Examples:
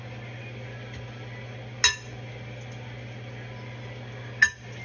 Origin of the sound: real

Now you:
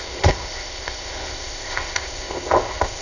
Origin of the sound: fake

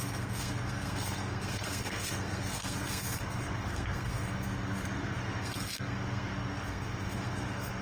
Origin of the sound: fake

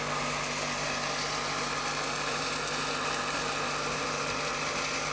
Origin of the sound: real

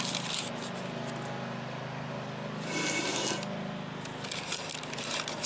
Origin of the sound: real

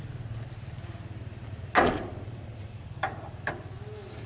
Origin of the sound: real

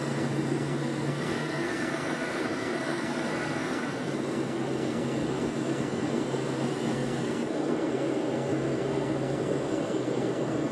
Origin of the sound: fake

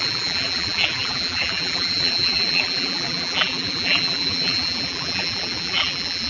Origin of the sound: fake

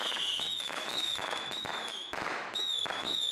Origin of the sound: fake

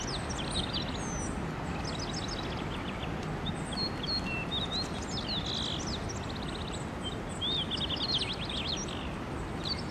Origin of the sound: real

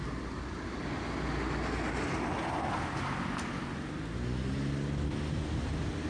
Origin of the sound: real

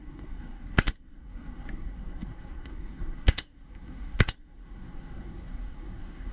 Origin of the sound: fake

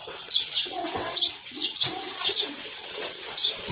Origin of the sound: fake